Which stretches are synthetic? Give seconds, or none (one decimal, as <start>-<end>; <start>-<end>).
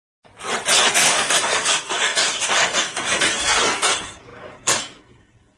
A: 0.9-5.6